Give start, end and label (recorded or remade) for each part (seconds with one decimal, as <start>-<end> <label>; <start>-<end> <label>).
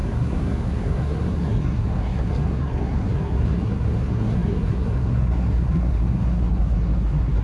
0.0-7.4 remade